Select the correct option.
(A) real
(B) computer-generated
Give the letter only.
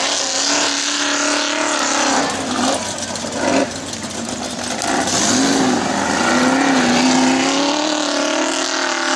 A